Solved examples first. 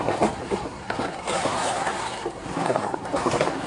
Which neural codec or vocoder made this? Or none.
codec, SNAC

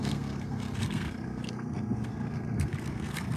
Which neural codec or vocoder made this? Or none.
codec, SNAC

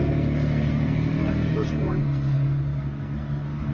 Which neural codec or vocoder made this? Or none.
codec, SNAC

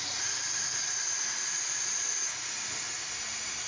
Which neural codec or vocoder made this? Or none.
none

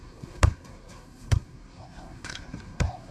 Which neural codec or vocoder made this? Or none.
codec, SNAC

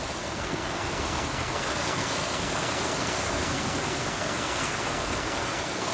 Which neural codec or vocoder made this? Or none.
codec, SNAC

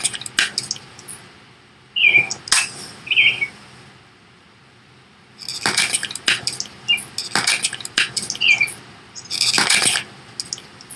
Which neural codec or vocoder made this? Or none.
none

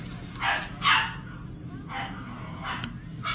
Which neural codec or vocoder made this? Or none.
none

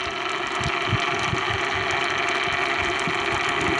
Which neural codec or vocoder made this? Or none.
none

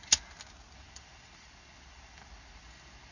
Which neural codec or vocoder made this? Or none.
none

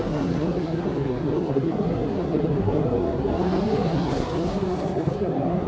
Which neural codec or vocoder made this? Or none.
codec, SNAC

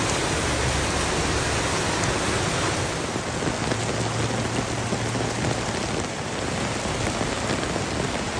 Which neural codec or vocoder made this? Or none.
none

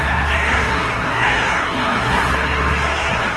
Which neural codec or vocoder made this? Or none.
codec, SNAC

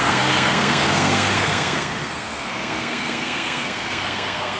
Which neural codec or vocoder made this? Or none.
codec, SNAC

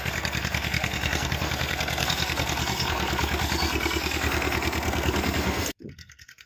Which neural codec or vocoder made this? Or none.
codec, SNAC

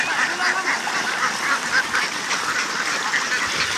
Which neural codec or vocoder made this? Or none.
none